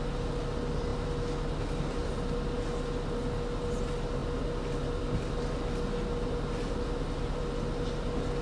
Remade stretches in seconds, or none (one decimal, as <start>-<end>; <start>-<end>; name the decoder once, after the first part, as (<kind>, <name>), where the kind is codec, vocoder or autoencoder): none